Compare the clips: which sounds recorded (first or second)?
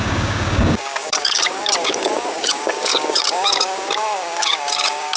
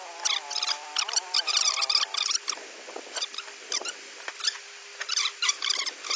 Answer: second